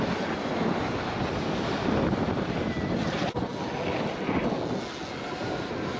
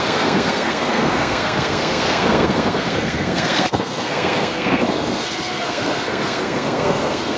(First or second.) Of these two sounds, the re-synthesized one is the second